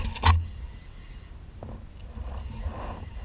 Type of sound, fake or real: real